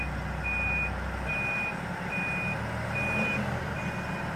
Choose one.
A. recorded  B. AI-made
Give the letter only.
A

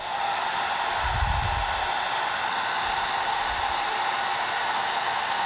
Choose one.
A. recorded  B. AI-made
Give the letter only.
A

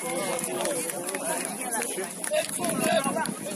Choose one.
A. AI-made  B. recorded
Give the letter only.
B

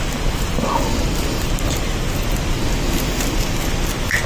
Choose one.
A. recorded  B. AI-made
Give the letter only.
A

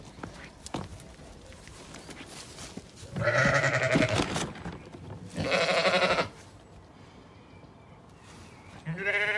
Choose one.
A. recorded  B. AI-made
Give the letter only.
A